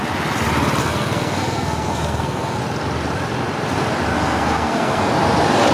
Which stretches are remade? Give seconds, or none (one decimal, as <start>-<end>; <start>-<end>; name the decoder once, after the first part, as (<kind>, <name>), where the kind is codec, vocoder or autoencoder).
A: 0.8-2.6 (codec, SNAC); 4.1-5.1